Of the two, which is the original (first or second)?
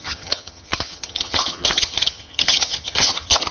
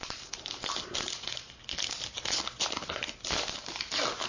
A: second